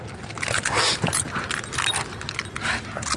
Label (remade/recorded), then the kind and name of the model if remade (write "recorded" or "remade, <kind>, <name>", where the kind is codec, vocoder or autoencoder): recorded